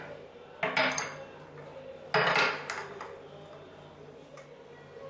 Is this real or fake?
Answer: real